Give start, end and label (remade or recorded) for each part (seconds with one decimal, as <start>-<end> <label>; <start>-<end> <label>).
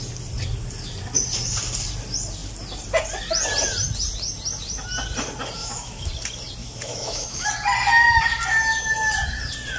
0.0-5.6 recorded; 5.6-6.1 remade; 6.1-6.6 recorded; 6.6-7.5 remade; 7.5-9.8 recorded